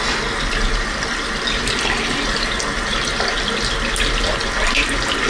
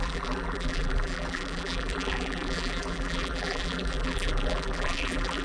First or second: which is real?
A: first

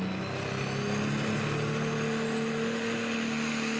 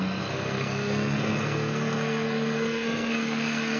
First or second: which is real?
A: first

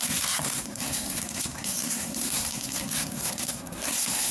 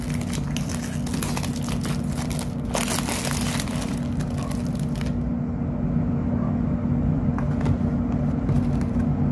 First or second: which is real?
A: second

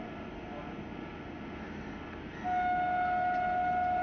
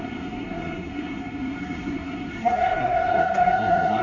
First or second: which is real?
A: first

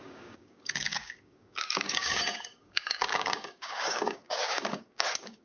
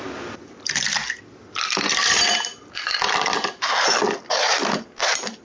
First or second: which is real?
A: second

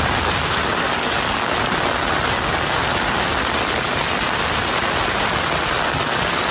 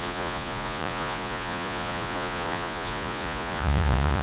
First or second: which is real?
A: first